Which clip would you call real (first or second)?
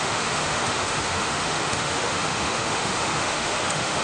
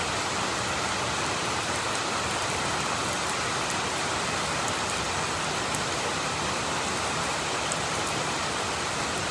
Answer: second